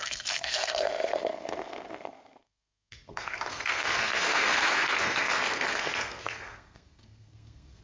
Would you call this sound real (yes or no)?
no